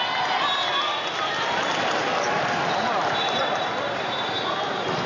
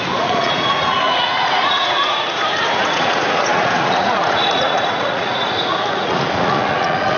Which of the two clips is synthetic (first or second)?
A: second